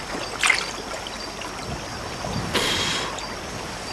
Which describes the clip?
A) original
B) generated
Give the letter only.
A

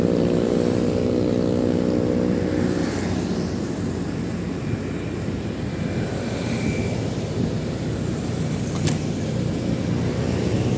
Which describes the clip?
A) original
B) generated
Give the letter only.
A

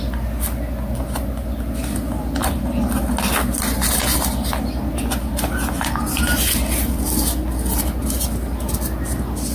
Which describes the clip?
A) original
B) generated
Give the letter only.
A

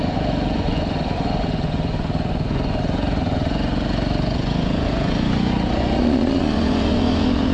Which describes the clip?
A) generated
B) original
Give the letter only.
A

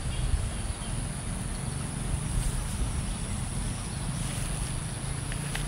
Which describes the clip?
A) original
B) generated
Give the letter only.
A